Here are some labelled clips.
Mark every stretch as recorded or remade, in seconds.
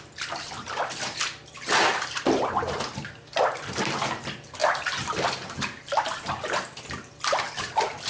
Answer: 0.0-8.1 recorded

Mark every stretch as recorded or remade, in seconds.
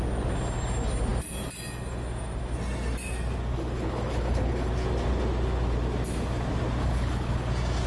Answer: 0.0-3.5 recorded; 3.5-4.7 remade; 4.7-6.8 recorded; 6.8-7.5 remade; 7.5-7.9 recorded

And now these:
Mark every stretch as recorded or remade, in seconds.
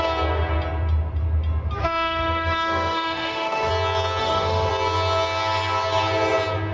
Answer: 0.0-1.8 recorded; 1.8-3.7 remade; 3.7-4.2 recorded; 4.2-4.7 remade; 4.7-6.7 recorded